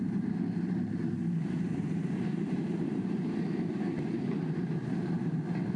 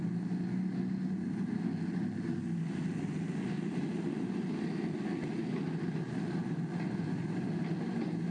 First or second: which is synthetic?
first